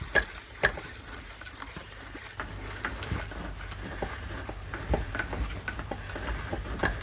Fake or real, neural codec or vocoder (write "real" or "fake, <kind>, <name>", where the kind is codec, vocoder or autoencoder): real